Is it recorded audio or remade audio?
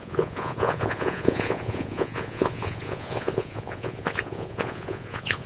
remade